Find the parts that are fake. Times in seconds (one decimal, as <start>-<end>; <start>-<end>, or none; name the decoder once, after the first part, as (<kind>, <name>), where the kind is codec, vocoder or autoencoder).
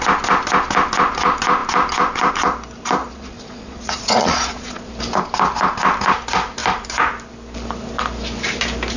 3.0-4.9 (vocoder, Vocos)